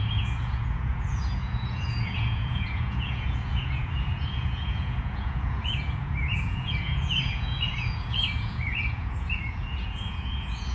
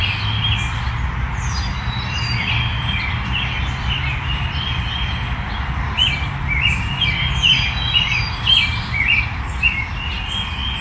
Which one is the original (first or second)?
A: second